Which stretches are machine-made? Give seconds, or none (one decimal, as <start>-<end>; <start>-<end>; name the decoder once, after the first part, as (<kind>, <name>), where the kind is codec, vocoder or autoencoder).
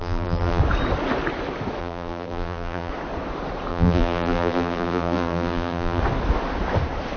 0.0-0.6 (vocoder, BigVGAN v2); 1.8-2.9; 3.7-6.0